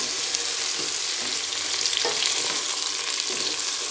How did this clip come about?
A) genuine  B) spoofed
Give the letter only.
A